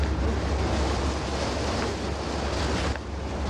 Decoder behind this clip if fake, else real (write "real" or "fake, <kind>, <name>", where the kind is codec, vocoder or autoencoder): real